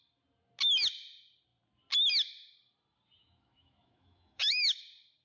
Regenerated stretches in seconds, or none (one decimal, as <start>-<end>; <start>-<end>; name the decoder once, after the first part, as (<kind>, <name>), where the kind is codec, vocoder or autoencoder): 3.2-4.8 (autoencoder, DAC-VAE)